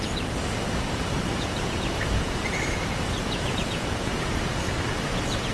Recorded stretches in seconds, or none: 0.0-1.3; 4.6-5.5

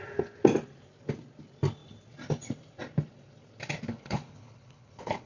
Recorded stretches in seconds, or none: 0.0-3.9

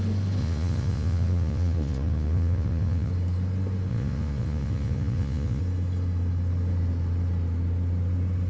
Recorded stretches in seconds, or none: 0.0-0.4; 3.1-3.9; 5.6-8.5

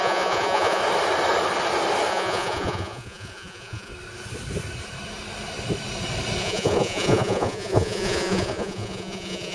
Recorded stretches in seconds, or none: 0.8-2.1; 3.9-6.4

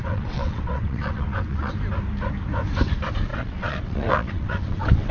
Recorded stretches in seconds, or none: 1.7-3.3

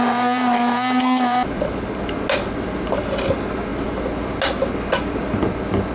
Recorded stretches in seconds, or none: 0.0-5.9

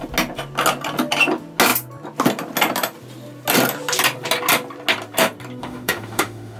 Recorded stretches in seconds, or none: 0.0-5.6